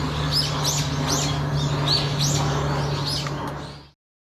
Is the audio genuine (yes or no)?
yes